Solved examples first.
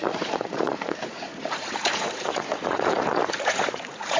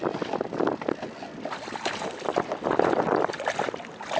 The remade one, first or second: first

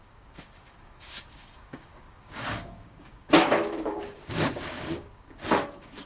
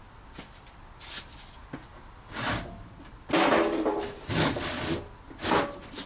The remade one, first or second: first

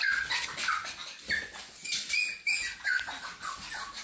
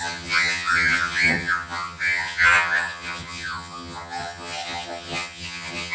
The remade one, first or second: second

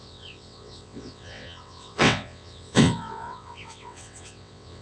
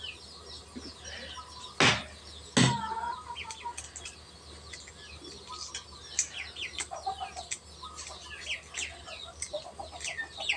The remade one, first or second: first